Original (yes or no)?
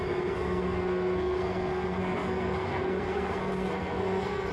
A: no